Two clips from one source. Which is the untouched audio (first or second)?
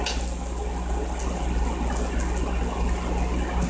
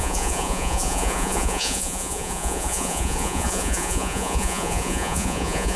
first